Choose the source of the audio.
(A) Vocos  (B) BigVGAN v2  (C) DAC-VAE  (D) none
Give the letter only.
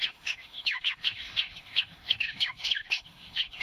C